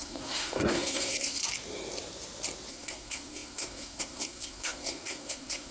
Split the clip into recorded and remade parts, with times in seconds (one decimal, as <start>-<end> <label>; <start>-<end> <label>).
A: 0.0-1.4 remade; 1.4-2.7 recorded; 2.7-5.7 remade

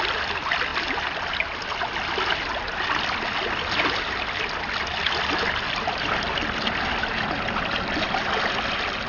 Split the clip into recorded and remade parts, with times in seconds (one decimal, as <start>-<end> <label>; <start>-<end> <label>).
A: 0.0-9.1 recorded

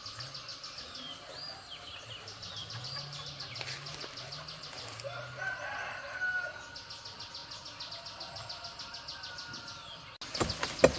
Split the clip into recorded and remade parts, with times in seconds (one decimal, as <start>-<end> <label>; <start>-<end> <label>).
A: 0.0-11.0 recorded

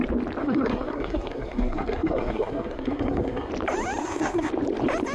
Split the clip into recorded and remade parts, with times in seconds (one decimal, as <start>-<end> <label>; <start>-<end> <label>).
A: 0.0-0.4 recorded; 0.4-3.5 remade; 3.5-4.0 recorded; 4.0-4.5 remade; 4.5-5.1 recorded

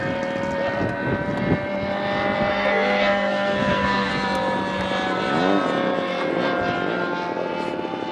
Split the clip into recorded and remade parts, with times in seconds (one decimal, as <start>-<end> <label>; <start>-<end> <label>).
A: 0.0-2.5 recorded; 2.5-4.1 remade; 4.1-8.1 recorded